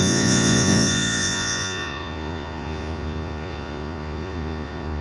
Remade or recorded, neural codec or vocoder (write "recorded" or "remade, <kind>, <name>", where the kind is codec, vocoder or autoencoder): remade, vocoder, Vocos